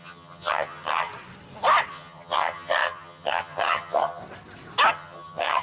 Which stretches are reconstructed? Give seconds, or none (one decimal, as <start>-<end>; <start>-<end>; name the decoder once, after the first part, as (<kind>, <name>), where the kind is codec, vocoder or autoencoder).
0.0-1.1 (vocoder, HiFi-GAN); 1.9-4.2; 4.9-5.6